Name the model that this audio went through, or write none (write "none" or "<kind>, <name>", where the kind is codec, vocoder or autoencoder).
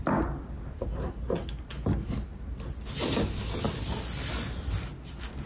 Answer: none